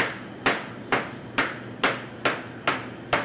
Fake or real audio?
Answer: real